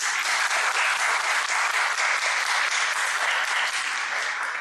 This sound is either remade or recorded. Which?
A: recorded